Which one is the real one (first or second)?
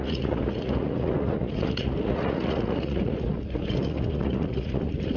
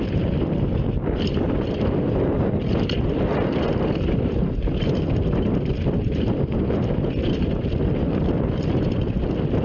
second